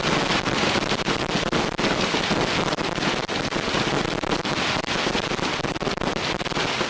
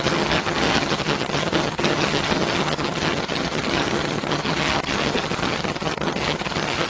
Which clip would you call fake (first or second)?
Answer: second